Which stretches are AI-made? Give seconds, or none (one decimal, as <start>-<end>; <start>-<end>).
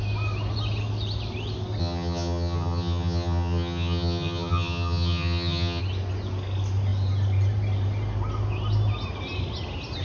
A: 1.8-5.8